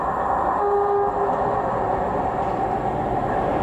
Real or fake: real